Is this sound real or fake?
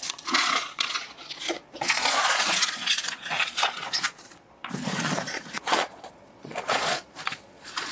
fake